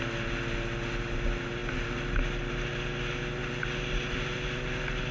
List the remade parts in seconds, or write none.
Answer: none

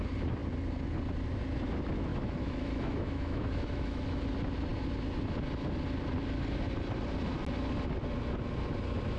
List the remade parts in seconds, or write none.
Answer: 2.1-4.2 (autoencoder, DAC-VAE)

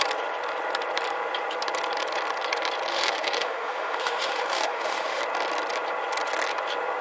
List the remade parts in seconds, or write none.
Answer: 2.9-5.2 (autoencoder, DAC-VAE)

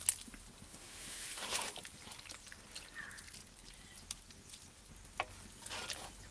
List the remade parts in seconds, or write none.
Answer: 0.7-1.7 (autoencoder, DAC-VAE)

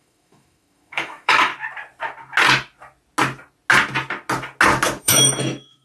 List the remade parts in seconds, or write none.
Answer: 0.0-1.5 (autoencoder, DAC-VAE); 5.0-5.8